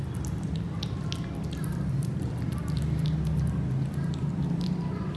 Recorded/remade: remade